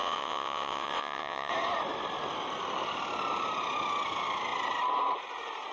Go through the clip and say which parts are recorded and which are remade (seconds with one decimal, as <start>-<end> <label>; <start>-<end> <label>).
0.0-1.5 remade; 1.5-5.7 recorded